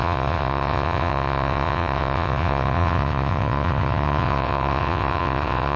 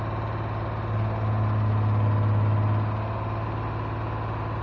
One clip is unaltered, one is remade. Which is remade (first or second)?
first